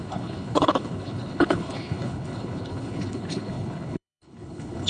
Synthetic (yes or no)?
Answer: yes